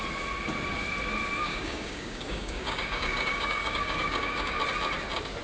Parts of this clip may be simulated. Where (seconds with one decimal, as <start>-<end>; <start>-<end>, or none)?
1.5-4.6